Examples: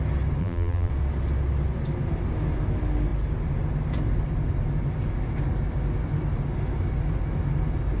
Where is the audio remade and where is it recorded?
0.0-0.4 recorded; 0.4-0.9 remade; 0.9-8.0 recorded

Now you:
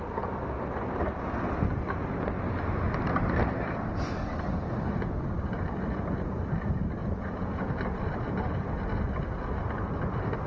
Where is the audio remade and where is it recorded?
0.0-7.0 recorded; 7.0-7.6 remade; 7.6-10.5 recorded

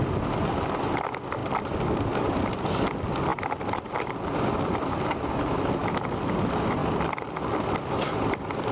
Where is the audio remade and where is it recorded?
0.0-8.7 recorded

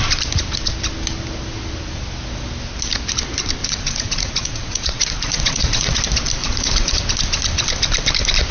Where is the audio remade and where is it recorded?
0.0-3.6 recorded; 3.6-6.0 remade; 6.0-6.4 recorded; 6.4-7.0 remade; 7.0-8.5 recorded